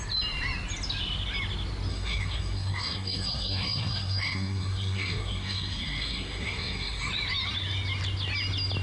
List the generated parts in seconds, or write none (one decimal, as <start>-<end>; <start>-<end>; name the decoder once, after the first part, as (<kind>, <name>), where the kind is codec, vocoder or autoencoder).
1.9-7.1 (codec, SNAC)